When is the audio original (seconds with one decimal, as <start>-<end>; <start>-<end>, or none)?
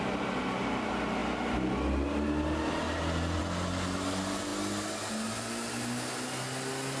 0.0-7.0